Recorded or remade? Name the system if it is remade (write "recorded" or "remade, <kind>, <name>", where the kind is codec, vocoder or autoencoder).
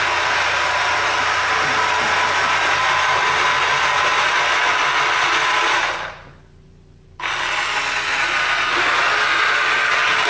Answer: recorded